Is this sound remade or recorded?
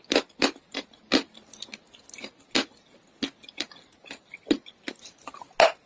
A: recorded